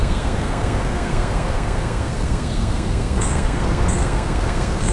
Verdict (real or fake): fake